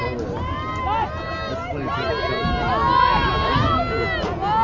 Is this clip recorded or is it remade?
recorded